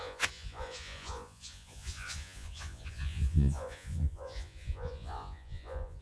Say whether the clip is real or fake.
fake